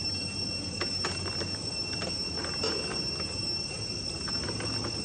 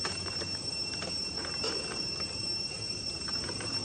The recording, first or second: first